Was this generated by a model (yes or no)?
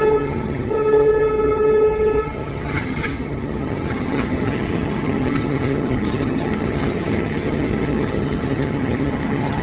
yes